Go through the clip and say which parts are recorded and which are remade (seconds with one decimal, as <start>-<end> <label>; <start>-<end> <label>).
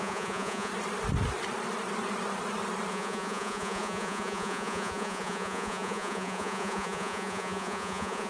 0.0-0.7 remade; 0.7-2.9 recorded; 2.9-8.3 remade